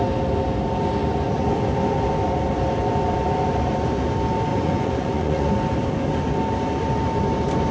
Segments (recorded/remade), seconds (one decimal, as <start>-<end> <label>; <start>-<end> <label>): 0.0-4.5 recorded; 4.5-5.5 remade; 5.5-7.7 recorded